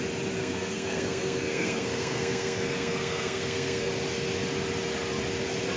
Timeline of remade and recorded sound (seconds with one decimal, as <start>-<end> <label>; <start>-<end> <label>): 0.0-0.4 recorded; 0.4-3.9 remade; 3.9-5.8 recorded